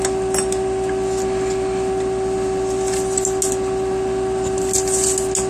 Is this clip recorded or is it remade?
recorded